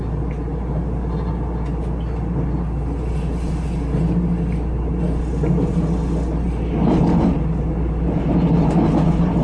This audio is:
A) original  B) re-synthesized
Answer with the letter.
A